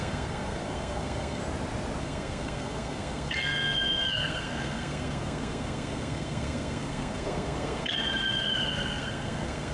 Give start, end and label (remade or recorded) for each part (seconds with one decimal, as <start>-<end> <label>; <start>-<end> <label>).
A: 0.0-1.4 remade; 1.4-2.0 recorded; 2.0-9.7 remade